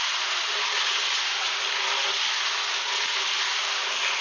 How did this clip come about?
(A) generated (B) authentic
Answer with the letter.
B